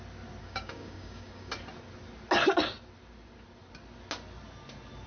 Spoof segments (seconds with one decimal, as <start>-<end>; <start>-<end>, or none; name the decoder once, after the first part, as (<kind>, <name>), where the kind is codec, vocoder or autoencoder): 0.4-1.5 (codec, DAC)